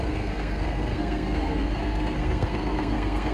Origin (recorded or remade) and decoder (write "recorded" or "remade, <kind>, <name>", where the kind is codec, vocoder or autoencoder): remade, codec, SNAC